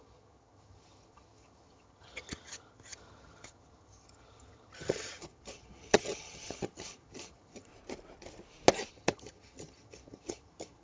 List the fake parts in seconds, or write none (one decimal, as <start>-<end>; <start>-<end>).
0.0-7.7; 8.9-10.8